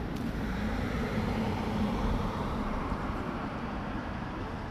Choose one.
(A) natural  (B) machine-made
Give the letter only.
B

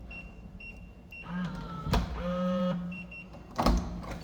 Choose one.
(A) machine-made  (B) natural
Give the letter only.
A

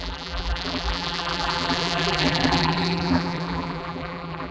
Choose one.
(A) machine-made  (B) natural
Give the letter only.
A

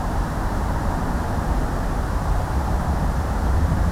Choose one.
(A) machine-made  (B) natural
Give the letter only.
A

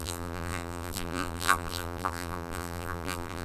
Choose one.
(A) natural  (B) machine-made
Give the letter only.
B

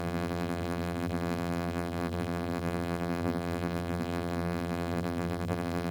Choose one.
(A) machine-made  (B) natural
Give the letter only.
A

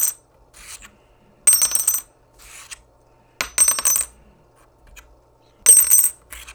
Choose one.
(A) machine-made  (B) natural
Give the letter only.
B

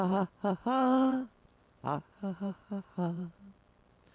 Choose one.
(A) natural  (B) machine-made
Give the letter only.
B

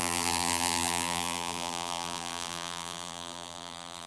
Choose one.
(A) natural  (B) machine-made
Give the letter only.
B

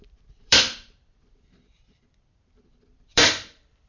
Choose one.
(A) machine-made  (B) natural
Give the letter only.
A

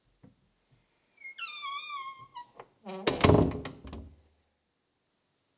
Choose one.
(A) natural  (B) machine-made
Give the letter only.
A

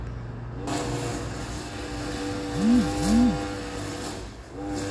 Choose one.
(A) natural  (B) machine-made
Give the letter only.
A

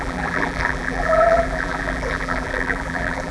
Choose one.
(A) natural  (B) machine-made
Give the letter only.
B